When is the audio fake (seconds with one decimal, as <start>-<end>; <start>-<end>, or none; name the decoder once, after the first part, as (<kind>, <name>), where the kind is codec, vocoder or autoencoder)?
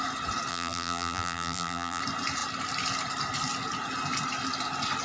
0.5-2.0 (vocoder, BigVGAN v2)